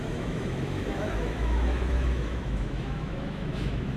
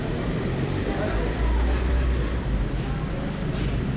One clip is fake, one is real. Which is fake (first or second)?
first